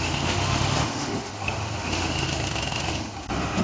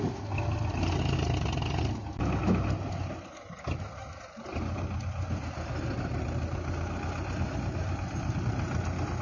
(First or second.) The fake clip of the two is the first